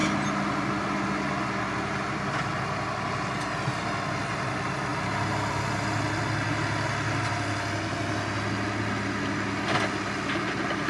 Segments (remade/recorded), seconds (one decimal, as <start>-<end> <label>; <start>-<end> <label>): 0.0-10.9 recorded